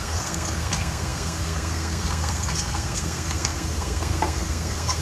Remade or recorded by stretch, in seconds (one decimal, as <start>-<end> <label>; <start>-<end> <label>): 0.0-5.0 remade

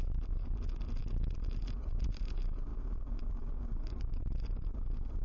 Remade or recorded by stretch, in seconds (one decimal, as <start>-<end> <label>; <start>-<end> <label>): 0.0-5.2 recorded

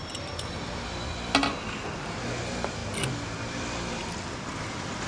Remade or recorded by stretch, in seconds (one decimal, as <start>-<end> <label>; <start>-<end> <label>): 0.0-5.1 recorded

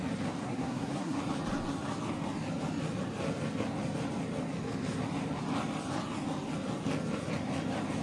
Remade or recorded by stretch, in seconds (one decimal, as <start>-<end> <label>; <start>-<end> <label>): 0.0-0.4 recorded; 0.4-1.2 remade; 1.2-8.0 recorded